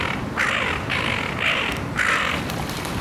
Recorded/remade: recorded